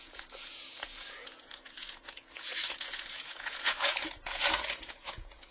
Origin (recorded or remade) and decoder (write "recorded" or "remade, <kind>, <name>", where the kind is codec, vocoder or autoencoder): remade, vocoder, Vocos